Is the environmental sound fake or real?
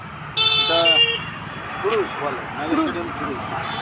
real